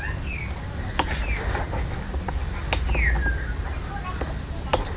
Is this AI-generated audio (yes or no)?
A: no